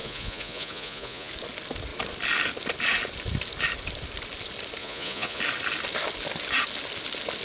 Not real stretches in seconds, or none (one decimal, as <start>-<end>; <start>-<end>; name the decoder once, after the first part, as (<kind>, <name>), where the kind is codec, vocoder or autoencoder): 0.0-1.3 (vocoder, Vocos); 4.8-5.4